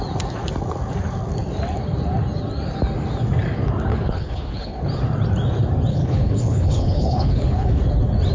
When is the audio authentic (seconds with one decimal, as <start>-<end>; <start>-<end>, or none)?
0.0-3.9; 4.8-5.9; 7.8-8.3